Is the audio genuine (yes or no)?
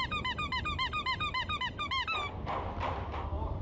yes